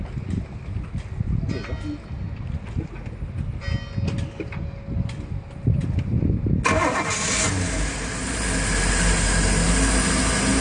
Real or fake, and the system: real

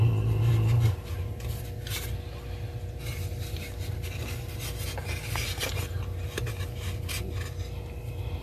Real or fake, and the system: real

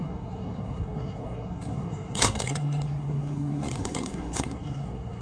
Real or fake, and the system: fake, codec, SNAC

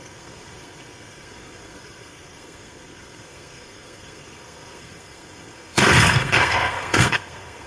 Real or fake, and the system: fake, codec, SNAC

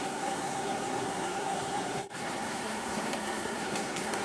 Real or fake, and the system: fake, codec, SNAC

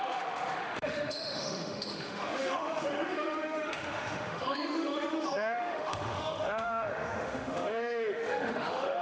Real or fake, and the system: fake, autoencoder, DAC-VAE